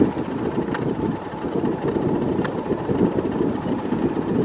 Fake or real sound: real